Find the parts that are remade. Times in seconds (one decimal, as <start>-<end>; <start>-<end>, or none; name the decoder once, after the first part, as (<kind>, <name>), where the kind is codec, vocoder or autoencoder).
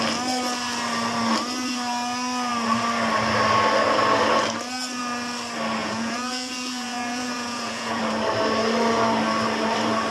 5.8-8.0 (vocoder, Vocos)